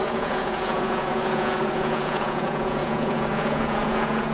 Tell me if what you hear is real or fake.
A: fake